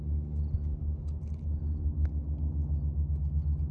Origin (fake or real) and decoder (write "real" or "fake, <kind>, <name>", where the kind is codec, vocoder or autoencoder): real